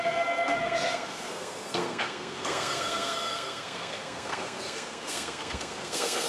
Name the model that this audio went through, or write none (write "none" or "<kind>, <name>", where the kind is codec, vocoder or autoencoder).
codec, SNAC